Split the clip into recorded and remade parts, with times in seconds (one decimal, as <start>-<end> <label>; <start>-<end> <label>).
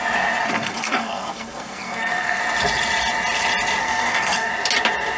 0.0-0.5 recorded; 0.5-2.4 remade; 2.4-3.8 recorded; 3.8-4.5 remade; 4.5-5.2 recorded